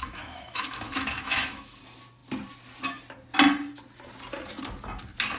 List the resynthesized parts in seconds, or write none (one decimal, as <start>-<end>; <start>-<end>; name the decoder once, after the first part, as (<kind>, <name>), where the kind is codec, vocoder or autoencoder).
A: 0.0-1.8 (autoencoder, DAC-VAE)